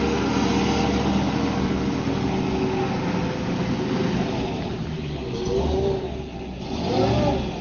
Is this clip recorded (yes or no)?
yes